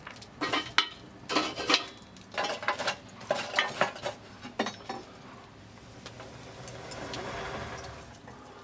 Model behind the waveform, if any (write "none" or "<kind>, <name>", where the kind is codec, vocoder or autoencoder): none